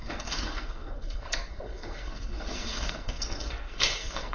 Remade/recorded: remade